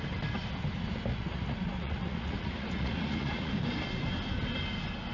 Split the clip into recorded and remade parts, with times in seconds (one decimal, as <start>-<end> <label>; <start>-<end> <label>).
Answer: 0.0-1.1 recorded; 1.1-3.5 remade; 3.5-5.1 recorded

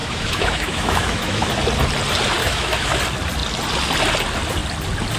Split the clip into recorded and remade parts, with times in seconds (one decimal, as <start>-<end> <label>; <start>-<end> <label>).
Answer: 0.0-1.5 remade; 1.5-2.4 recorded; 2.4-3.0 remade; 3.0-5.2 recorded

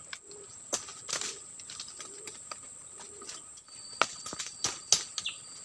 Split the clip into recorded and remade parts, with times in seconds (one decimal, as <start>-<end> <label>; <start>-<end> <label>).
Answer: 0.0-5.6 recorded